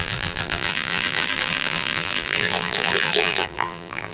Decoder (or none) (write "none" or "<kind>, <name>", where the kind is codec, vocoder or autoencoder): vocoder, BigVGAN v2